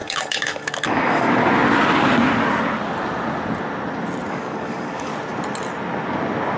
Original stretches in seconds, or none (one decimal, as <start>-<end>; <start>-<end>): 1.4-4.3; 5.1-6.6